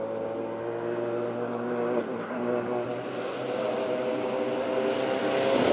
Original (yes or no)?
yes